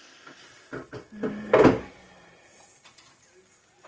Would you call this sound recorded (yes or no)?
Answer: yes